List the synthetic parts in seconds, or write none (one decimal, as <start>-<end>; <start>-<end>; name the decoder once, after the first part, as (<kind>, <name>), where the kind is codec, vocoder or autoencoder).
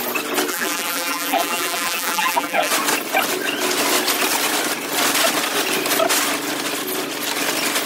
0.5-2.7 (vocoder, BigVGAN v2)